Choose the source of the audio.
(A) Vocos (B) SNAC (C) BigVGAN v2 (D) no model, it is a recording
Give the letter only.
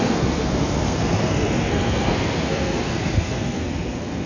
B